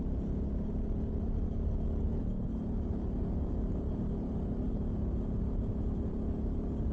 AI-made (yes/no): no